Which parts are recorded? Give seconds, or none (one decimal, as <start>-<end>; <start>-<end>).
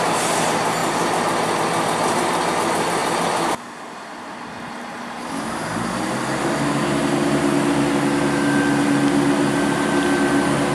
0.0-10.7